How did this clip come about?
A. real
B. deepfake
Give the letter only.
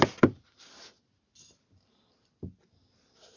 A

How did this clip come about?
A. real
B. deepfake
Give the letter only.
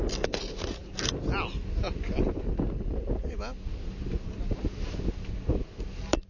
A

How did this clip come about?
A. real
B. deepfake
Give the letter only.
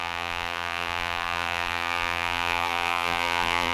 B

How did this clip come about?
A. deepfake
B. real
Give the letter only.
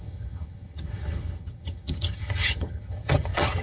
A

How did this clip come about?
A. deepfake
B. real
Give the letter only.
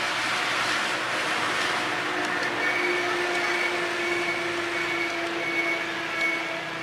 B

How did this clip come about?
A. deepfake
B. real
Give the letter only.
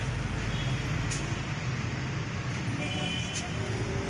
B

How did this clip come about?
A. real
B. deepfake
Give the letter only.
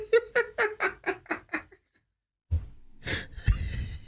A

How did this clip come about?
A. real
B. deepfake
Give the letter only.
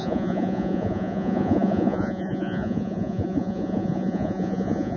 B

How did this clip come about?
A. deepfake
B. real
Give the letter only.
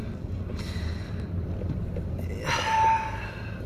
B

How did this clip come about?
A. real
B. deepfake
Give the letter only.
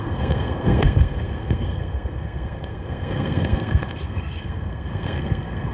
B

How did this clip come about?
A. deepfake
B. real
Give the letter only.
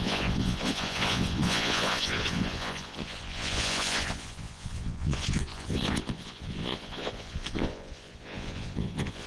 A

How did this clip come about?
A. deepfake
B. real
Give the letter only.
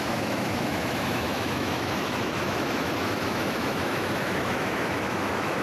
A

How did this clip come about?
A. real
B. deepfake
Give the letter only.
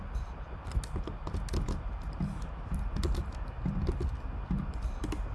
A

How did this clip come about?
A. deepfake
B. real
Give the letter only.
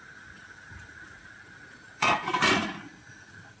A